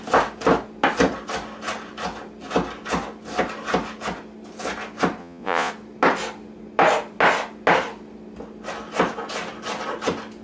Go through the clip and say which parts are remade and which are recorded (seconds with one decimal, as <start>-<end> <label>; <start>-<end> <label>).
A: 0.0-5.2 recorded; 5.2-5.7 remade; 5.7-10.4 recorded